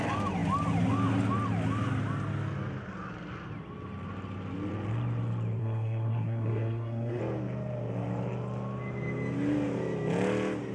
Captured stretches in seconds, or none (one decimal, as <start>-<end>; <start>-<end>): 0.0-5.6; 7.2-10.7